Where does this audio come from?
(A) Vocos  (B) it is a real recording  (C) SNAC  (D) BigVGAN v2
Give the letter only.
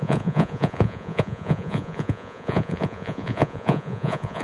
A